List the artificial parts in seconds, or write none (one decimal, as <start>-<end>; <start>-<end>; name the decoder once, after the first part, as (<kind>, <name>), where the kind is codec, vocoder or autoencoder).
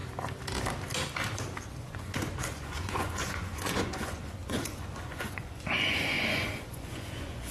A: 1.8-7.5 (vocoder, Vocos)